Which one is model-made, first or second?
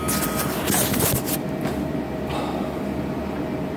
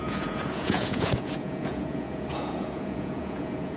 second